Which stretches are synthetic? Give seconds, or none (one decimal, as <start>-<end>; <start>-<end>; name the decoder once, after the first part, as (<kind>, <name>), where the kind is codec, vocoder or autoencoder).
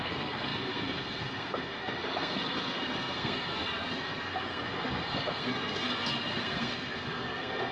0.0-7.7 (codec, SNAC)